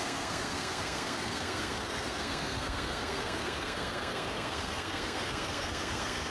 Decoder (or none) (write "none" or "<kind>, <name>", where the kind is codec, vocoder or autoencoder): codec, SNAC